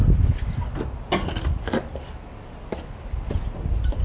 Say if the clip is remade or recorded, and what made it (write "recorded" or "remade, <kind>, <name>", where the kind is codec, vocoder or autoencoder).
recorded